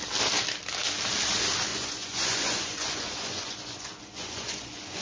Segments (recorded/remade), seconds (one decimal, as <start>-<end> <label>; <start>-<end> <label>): 0.0-1.7 recorded; 1.7-5.0 remade